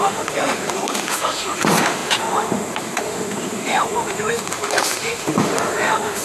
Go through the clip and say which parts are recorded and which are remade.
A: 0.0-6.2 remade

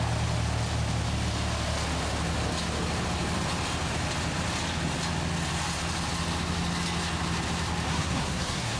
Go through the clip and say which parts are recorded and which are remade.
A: 0.0-7.9 recorded; 7.9-8.8 remade

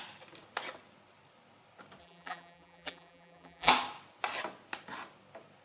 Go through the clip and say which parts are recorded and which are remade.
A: 0.0-2.0 recorded; 2.0-3.7 remade; 3.7-5.6 recorded